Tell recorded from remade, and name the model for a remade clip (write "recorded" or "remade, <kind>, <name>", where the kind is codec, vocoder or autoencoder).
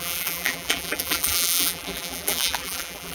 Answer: remade, vocoder, BigVGAN v2